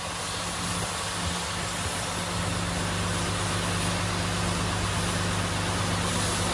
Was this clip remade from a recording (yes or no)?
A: no